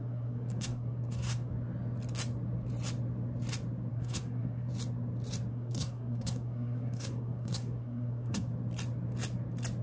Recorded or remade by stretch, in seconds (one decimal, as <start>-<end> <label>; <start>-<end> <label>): 0.0-1.5 remade; 1.5-3.9 recorded; 3.9-4.7 remade; 4.7-5.5 recorded; 5.5-8.5 remade; 8.5-9.8 recorded